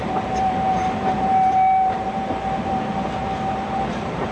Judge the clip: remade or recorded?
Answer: remade